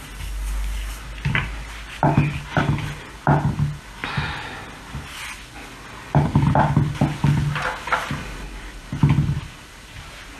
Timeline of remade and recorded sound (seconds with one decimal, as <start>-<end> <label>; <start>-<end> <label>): 0.0-10.4 recorded